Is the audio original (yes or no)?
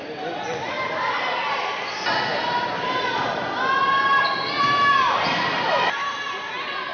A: yes